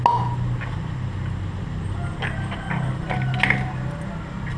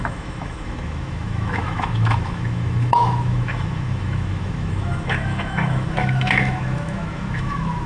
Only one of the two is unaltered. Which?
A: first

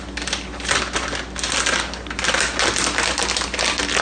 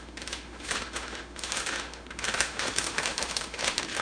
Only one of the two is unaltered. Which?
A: first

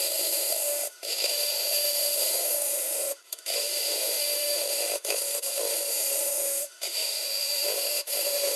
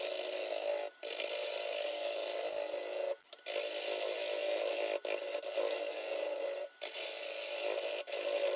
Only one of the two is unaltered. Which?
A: second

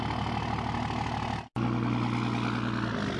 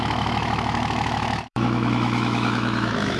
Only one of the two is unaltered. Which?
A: first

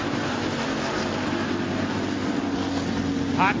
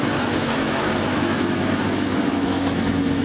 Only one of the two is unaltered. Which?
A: first